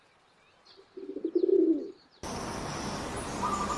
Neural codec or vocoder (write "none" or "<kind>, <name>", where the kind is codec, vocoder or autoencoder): none